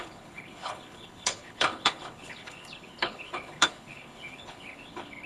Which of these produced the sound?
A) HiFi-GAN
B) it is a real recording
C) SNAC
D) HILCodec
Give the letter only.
D